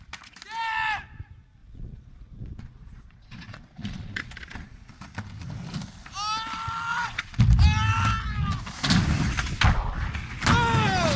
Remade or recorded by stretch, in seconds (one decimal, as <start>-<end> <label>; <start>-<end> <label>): 0.0-1.6 recorded; 1.6-4.9 remade; 4.9-6.9 recorded; 6.9-7.4 remade; 7.4-11.2 recorded